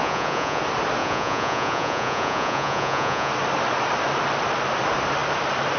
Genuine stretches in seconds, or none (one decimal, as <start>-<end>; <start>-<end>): 0.6-1.0; 3.3-5.8